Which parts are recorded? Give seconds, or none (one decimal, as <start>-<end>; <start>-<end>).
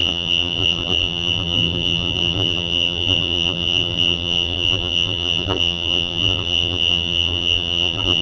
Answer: none